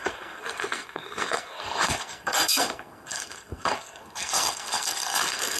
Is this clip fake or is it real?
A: fake